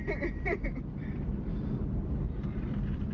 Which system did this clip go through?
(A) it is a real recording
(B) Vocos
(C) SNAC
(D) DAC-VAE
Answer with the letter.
A